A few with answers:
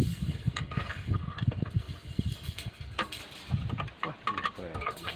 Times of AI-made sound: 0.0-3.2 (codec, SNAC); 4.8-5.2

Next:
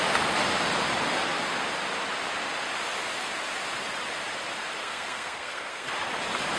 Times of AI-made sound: 4.8-5.9 (codec, SNAC)

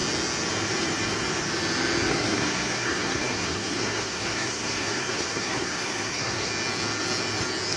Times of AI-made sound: 2.1-6.5 (codec, SNAC)